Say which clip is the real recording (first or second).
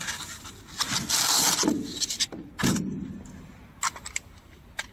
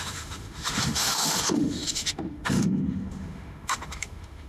first